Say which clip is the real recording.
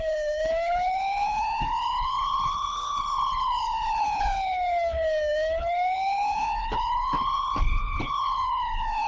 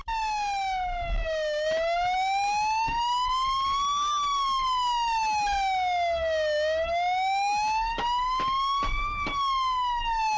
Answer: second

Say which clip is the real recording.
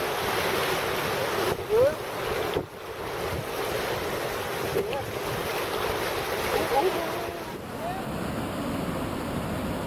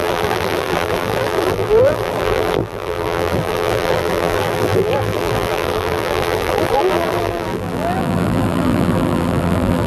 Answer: first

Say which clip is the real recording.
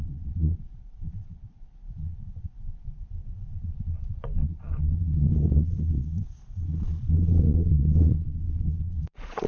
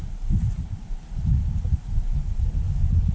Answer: second